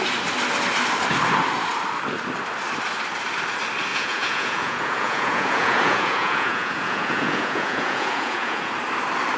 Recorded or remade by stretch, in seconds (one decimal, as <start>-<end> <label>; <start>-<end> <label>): 0.0-3.9 recorded; 3.9-8.7 remade; 8.7-9.4 recorded